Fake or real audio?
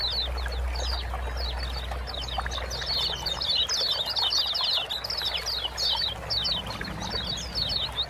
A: real